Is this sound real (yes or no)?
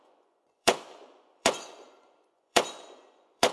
no